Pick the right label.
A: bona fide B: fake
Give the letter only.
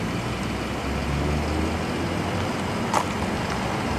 A